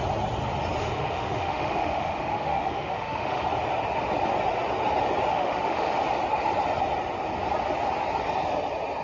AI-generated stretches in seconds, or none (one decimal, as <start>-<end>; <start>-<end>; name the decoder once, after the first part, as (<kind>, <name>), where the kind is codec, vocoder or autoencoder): 0.8-3.4 (autoencoder, DAC-VAE); 5.3-6.0